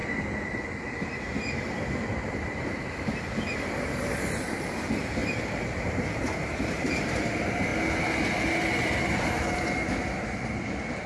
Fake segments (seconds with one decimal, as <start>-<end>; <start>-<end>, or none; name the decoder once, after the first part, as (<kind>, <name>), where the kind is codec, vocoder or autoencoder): 4.2-7.7 (vocoder, BigVGAN v2); 9.0-10.0